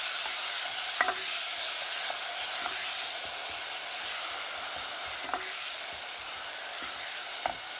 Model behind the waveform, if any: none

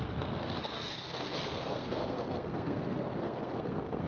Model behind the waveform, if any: codec, SNAC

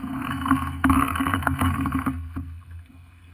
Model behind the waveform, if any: codec, SNAC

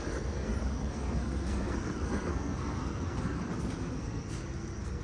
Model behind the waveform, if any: codec, SNAC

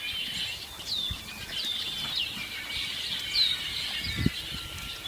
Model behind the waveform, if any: none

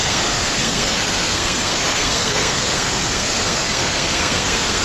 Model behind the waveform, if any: codec, SNAC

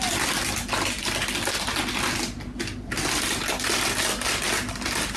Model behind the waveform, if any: none